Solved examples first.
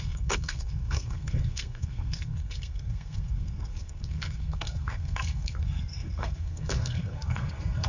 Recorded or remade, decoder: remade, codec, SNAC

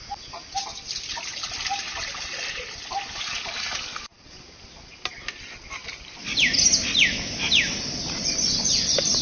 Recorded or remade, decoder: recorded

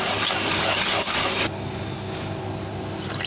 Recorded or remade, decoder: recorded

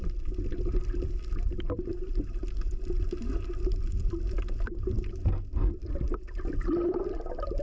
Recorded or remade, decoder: remade, vocoder, BigVGAN v2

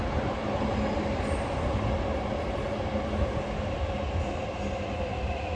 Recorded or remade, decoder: recorded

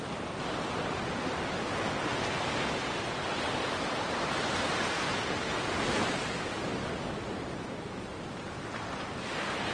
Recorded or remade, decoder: recorded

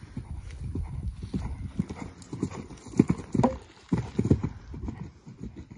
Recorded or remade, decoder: recorded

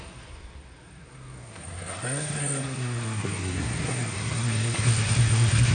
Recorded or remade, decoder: remade, codec, SNAC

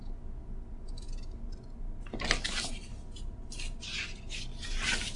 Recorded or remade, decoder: recorded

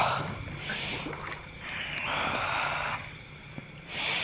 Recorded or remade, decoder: recorded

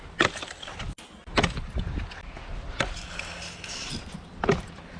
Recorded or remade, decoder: recorded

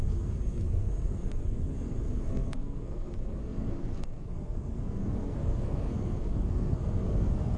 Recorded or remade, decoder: remade, codec, SNAC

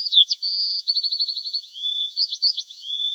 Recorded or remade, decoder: remade, vocoder, Vocos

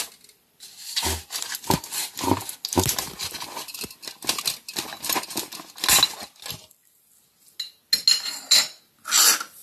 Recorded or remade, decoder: recorded